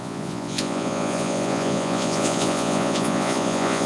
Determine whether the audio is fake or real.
fake